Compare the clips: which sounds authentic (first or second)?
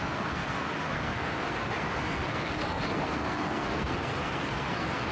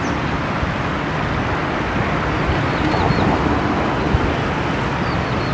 second